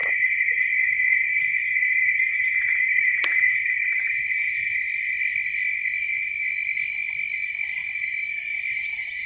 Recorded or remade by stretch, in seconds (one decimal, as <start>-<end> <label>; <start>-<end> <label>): 0.0-4.8 remade; 4.8-7.8 recorded; 7.8-9.3 remade